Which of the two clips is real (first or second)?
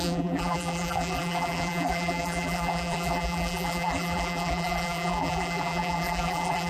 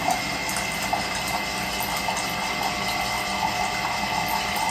second